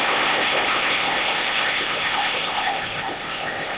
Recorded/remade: remade